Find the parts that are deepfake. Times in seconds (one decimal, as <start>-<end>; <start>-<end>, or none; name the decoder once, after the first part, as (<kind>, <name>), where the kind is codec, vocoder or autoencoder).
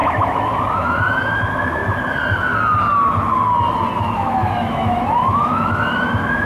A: 0.0-1.8 (autoencoder, DAC-VAE); 4.0-6.5